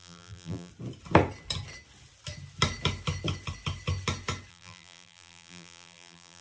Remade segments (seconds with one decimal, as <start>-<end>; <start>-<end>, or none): 0.0-0.7; 4.5-6.4